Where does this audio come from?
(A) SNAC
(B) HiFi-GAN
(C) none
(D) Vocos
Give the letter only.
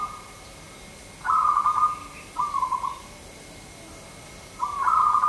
C